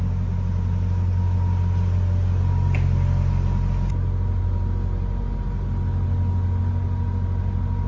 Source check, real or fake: real